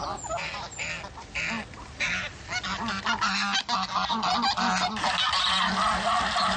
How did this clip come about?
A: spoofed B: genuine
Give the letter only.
B